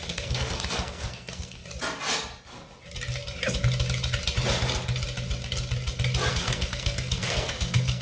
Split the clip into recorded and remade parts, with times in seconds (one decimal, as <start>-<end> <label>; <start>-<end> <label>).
0.0-1.6 remade; 1.6-6.3 recorded; 6.3-8.0 remade